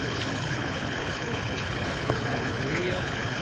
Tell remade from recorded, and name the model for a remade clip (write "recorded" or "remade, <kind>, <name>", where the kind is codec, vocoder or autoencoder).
remade, codec, HILCodec